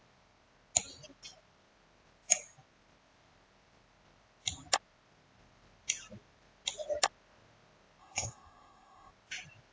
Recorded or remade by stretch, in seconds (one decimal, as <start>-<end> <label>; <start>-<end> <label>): 0.0-8.0 recorded; 8.0-9.1 remade; 9.1-9.7 recorded

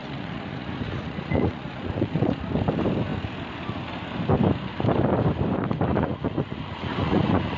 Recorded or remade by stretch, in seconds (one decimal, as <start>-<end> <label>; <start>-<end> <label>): 0.0-2.4 remade; 2.4-5.9 recorded; 5.9-7.6 remade

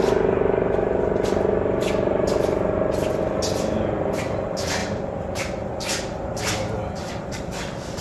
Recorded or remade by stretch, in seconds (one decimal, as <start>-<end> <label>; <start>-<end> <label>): 0.0-8.0 recorded

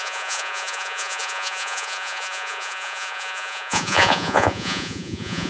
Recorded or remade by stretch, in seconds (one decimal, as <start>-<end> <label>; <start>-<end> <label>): 0.0-5.5 remade